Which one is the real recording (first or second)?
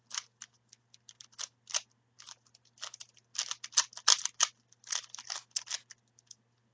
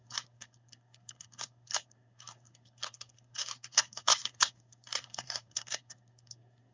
first